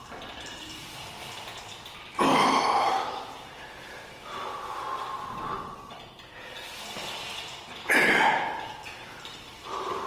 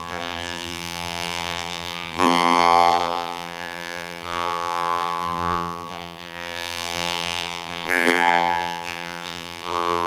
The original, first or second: first